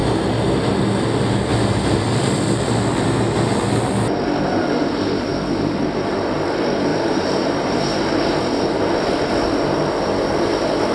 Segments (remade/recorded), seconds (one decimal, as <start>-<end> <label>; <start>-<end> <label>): 0.0-6.9 recorded; 6.9-8.9 remade; 8.9-10.9 recorded